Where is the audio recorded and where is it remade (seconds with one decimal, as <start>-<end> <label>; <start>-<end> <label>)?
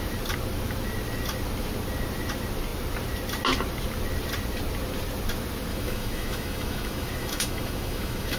0.0-5.7 recorded; 5.7-8.4 remade